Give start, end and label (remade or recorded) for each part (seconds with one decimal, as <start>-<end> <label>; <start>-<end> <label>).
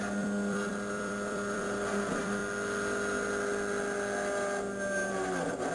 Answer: 0.0-2.4 remade; 2.4-5.1 recorded; 5.1-5.7 remade